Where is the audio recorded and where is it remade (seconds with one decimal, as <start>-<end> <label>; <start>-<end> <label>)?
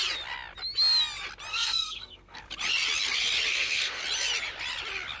0.0-1.5 recorded; 1.5-2.4 remade; 2.4-3.5 recorded; 3.5-4.0 remade; 4.0-5.2 recorded